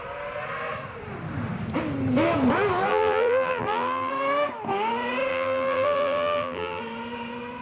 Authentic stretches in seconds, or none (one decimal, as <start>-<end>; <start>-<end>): 0.0-2.9; 4.1-5.3; 6.8-7.6